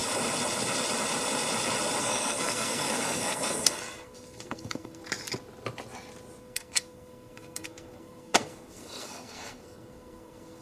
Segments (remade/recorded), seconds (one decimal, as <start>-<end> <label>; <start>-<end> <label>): 0.0-2.0 recorded; 2.0-5.0 remade; 5.0-6.4 recorded; 6.4-10.6 remade